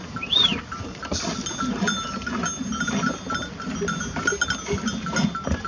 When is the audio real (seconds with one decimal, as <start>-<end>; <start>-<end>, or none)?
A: 0.0-5.7